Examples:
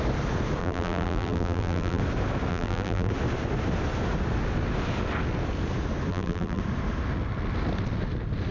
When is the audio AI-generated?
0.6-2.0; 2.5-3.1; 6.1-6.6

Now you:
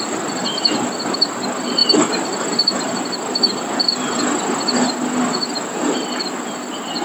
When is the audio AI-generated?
1.8-5.3

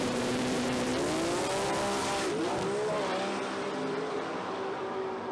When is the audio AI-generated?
0.0-0.9; 4.1-5.3